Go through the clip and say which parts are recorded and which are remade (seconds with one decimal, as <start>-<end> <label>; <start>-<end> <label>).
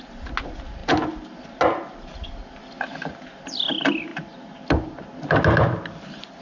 0.0-6.4 recorded